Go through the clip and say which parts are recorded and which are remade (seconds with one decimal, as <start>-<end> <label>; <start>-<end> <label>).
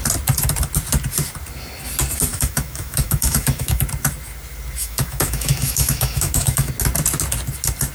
0.0-2.3 recorded; 2.3-3.8 remade; 3.8-4.8 recorded; 4.8-6.7 remade; 6.7-7.9 recorded